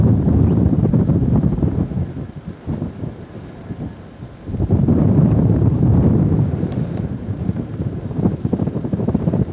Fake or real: fake